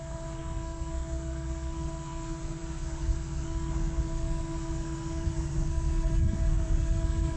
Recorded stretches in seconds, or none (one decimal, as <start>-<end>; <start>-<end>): none